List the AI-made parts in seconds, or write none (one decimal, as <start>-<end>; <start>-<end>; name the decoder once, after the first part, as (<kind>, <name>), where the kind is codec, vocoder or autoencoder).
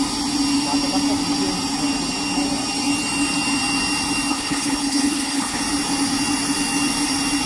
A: 4.3-5.6 (codec, HILCodec)